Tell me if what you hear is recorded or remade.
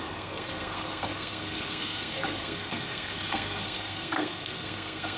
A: remade